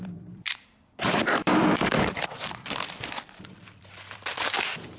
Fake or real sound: fake